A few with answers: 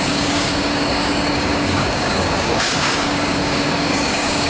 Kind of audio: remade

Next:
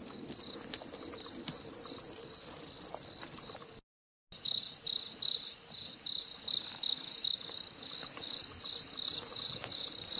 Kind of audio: recorded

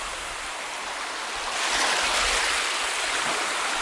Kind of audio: recorded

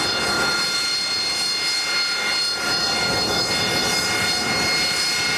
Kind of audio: recorded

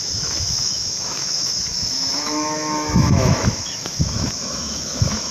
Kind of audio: remade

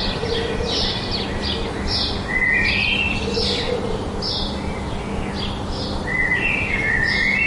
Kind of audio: recorded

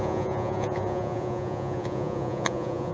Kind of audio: remade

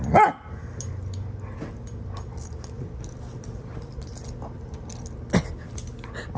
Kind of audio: recorded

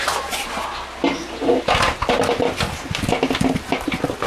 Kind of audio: recorded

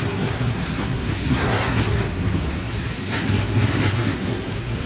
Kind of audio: remade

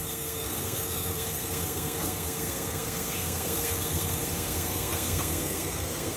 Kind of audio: remade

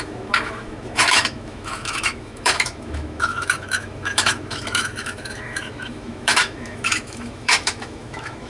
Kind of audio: remade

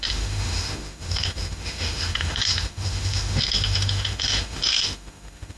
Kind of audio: remade